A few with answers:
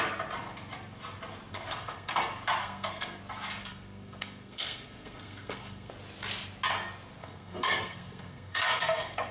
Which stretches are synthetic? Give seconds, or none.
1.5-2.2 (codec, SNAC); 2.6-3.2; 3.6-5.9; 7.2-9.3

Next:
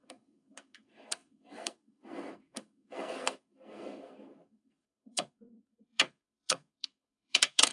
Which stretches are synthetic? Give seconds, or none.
0.0-7.7 (codec, SNAC)